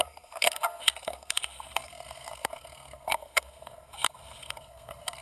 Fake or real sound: fake